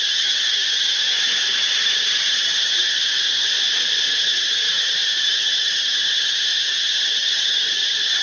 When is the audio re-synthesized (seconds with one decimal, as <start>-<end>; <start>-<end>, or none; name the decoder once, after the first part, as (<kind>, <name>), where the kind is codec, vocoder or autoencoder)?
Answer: 0.0-3.5 (vocoder, HiFi-GAN); 4.1-8.2